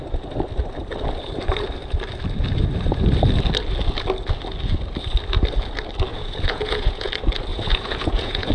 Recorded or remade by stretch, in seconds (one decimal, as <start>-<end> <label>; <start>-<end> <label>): 0.0-6.1 recorded; 6.1-7.1 remade; 7.1-7.5 recorded; 7.5-8.5 remade

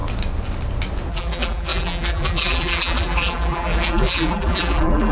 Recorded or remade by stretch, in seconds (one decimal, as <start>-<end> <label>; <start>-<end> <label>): 0.0-1.1 recorded; 1.1-5.1 remade

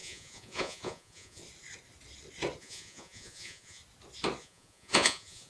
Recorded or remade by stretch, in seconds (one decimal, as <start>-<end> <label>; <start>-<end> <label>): 0.0-1.4 remade; 1.4-2.6 recorded; 2.6-3.8 remade; 3.8-4.4 recorded; 4.4-5.5 remade